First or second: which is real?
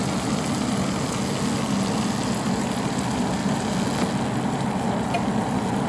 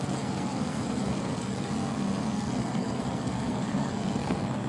first